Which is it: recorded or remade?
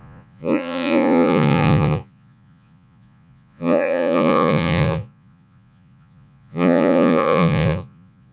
remade